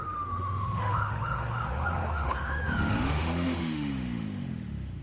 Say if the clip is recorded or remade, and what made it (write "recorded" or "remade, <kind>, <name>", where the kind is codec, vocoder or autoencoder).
remade, autoencoder, DAC-VAE